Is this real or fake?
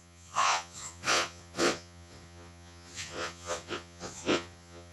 fake